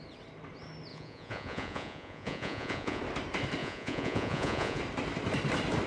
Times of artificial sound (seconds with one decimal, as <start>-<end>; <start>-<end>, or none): 0.9-3.0; 3.6-4.8